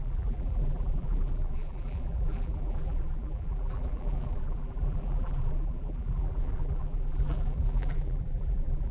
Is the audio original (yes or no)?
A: no